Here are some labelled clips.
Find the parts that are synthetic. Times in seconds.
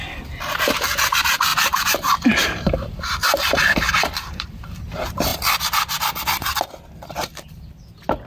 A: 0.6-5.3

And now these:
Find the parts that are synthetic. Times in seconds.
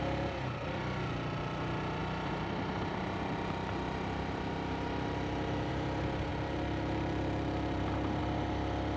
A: 2.0-5.7; 6.3-8.2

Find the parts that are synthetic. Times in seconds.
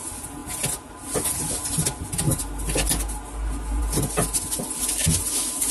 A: none